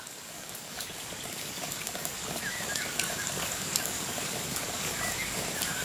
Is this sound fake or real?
fake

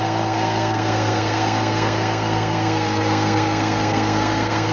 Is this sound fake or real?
fake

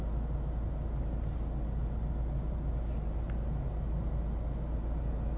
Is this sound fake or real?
real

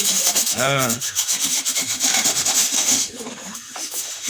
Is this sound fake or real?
fake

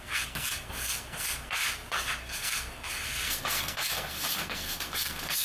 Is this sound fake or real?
fake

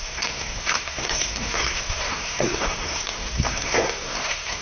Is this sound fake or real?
fake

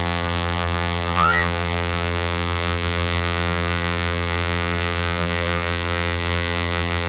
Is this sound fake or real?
fake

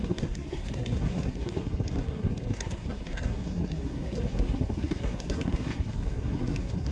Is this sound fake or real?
fake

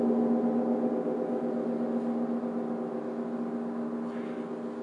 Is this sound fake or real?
real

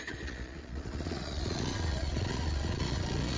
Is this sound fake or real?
fake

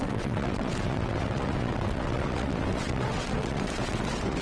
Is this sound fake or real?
fake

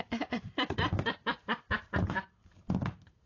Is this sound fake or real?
real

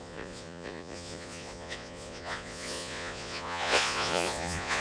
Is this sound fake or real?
fake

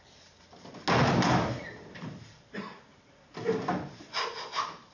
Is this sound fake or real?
real